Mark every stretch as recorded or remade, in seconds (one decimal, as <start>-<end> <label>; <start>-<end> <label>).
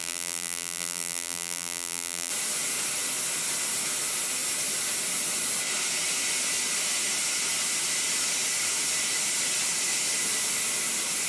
0.0-2.3 remade; 2.3-11.3 recorded